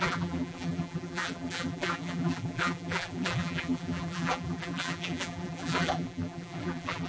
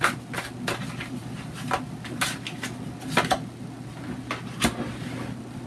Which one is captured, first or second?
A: second